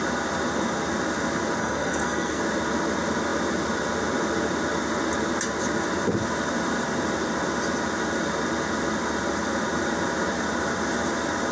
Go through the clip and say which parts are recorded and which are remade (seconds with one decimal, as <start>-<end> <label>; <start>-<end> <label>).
0.0-1.6 recorded; 1.6-2.4 remade; 2.4-11.5 recorded